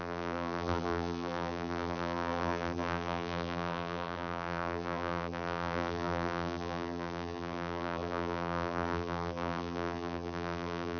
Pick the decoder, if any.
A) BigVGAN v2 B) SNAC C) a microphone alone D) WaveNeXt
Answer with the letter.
A